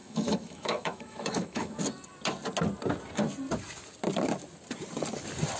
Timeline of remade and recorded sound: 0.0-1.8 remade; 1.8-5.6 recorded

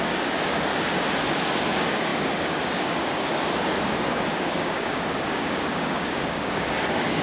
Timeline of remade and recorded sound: 0.0-0.7 remade; 0.7-1.7 recorded; 1.7-7.2 remade

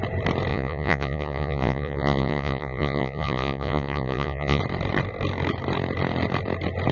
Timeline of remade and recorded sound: 0.0-0.5 recorded; 0.5-4.6 remade; 4.6-6.9 recorded

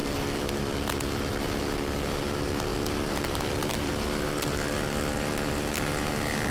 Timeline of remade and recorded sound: 0.0-0.6 remade; 0.6-2.7 recorded; 2.7-3.9 remade; 3.9-6.5 recorded

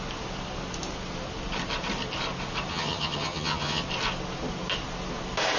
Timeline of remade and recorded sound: 0.0-2.7 recorded; 2.7-3.8 remade; 3.8-5.6 recorded

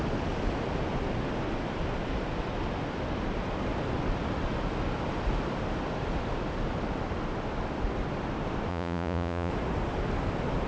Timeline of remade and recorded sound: 0.0-8.7 recorded; 8.7-9.5 remade; 9.5-10.7 recorded